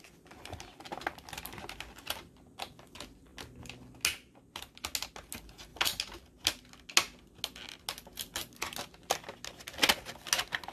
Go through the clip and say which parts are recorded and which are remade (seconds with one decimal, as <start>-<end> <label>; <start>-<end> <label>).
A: 0.0-10.7 recorded